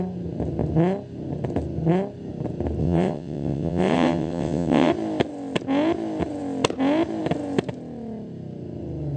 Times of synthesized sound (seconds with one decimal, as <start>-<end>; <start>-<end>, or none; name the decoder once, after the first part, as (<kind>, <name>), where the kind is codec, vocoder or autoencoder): 2.8-4.9 (vocoder, WaveNeXt)